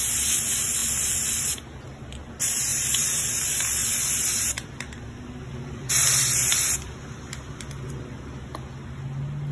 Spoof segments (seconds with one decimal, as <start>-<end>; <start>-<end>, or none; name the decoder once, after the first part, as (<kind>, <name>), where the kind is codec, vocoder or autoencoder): 2.7-3.3 (vocoder, BigVGAN v2)